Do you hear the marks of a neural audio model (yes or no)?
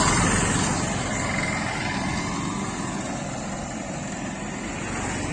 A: no